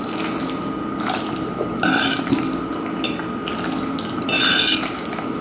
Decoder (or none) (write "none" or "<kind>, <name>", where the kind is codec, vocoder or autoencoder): none